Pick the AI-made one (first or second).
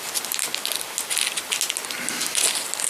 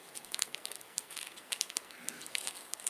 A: second